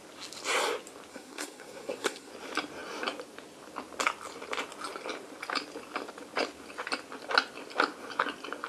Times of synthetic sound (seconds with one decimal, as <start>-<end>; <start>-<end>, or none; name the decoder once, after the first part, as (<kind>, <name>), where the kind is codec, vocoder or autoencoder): 1.1-2.3 (codec, SNAC)

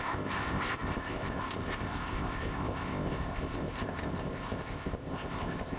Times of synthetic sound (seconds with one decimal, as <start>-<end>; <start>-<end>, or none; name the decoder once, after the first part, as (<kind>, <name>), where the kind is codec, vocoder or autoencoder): 0.0-5.8 (codec, ZipCodec)

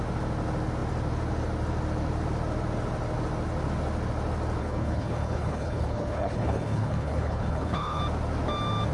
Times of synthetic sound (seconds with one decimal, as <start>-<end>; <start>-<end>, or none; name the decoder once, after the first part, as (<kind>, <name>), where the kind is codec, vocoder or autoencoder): 4.6-8.0 (codec, HILCodec)

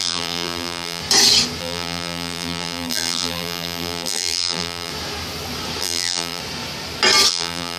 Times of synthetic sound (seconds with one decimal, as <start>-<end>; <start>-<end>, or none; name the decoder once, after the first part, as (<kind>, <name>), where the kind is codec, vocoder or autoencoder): 0.0-1.0 (vocoder, BigVGAN v2); 1.6-4.9; 5.8-6.4; 7.3-7.8